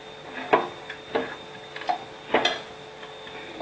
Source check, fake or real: real